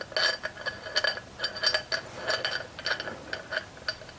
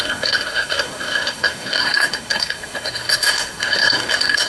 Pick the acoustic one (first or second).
first